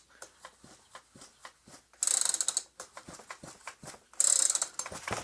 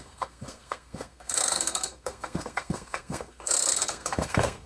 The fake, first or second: second